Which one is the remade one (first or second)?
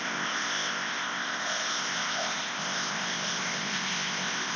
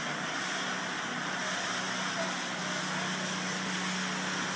first